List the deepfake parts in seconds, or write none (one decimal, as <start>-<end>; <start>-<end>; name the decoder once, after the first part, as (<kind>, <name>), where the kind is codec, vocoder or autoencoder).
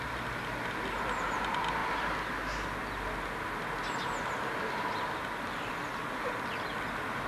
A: none